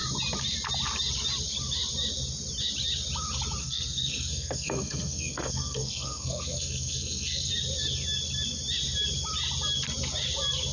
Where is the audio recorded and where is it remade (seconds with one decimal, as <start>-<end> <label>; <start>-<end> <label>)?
0.0-3.6 recorded; 3.6-7.5 remade; 7.5-10.7 recorded